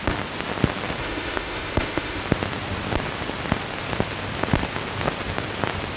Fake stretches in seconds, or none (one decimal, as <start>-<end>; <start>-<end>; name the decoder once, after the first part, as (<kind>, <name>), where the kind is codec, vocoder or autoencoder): 1.0-2.2 (autoencoder, DAC-VAE)